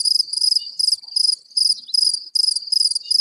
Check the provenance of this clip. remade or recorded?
recorded